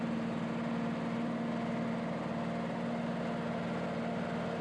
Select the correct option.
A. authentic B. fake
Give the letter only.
A